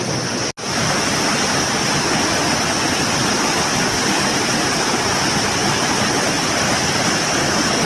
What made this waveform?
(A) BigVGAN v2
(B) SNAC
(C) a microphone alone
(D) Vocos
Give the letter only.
C